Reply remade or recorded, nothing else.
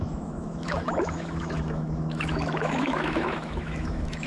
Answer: remade